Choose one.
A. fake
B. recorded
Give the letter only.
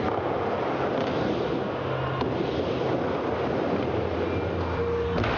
B